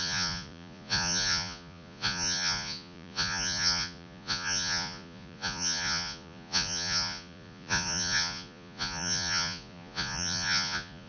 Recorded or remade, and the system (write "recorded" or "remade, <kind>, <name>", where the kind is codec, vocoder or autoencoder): remade, vocoder, Vocos